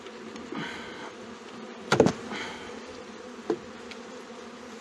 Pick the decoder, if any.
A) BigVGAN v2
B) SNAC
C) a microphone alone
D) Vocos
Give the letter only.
C